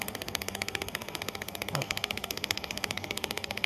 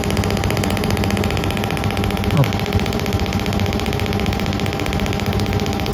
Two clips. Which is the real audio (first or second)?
second